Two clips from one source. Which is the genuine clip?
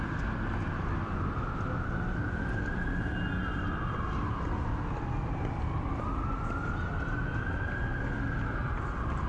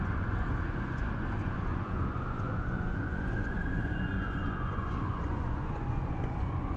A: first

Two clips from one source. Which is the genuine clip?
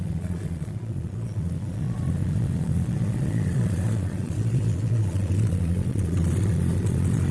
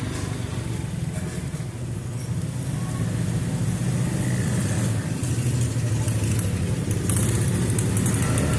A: second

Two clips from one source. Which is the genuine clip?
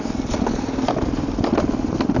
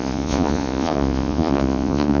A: first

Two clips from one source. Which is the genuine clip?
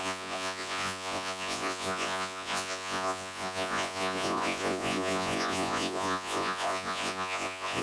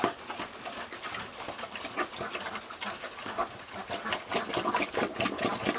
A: second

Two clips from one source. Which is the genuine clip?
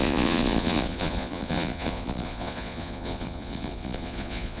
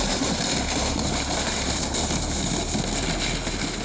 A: second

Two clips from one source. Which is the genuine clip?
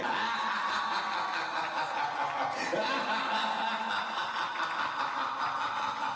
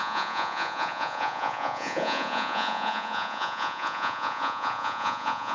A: first